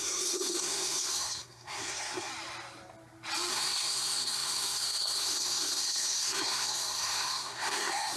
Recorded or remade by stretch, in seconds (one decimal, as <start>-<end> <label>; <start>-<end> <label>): 0.0-2.3 remade; 2.3-3.5 recorded; 3.5-8.2 remade